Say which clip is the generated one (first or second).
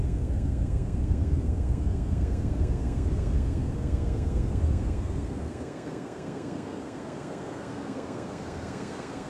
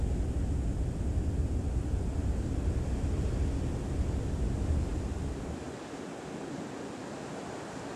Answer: first